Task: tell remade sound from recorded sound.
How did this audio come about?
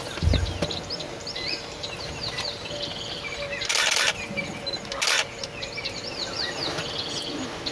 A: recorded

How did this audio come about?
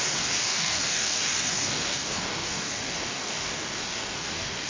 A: remade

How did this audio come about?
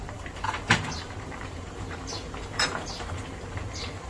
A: remade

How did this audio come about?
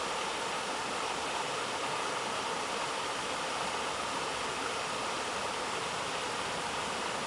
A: recorded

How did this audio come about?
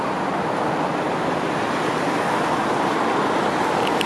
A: recorded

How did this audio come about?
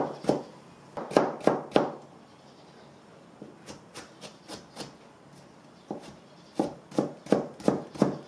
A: recorded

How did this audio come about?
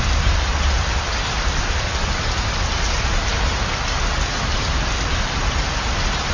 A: recorded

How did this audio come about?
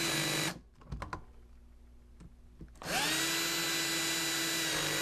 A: recorded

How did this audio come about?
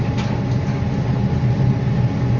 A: recorded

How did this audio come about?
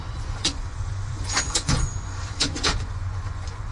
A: remade